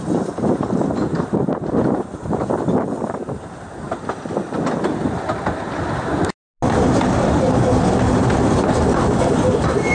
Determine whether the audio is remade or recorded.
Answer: recorded